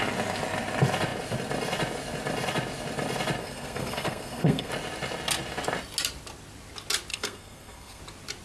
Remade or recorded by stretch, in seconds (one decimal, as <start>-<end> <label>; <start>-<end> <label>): 0.0-3.4 recorded; 3.4-4.7 remade; 4.7-7.1 recorded; 7.1-8.0 remade; 8.0-8.4 recorded